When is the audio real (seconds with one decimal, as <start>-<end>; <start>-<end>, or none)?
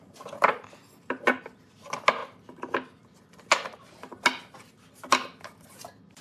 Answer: 0.0-6.2